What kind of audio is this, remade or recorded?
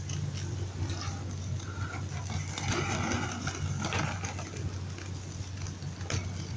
recorded